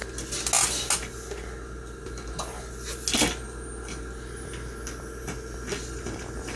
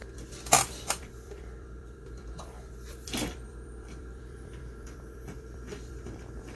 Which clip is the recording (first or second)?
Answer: first